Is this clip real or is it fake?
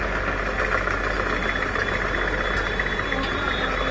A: real